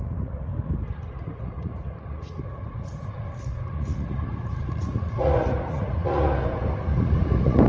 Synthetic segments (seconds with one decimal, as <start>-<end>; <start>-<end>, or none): 0.0-0.5; 1.1-7.7